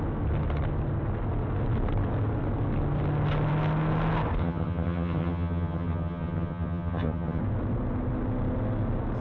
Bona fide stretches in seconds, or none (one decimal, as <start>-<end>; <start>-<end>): 0.0-4.4; 7.4-9.2